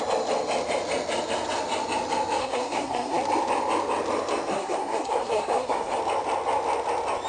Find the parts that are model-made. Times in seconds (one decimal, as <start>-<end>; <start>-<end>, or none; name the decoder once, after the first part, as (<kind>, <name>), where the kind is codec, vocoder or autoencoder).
2.4-3.2 (codec, SNAC); 4.5-6.0